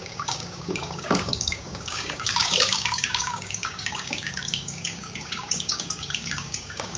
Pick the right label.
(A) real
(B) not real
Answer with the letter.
B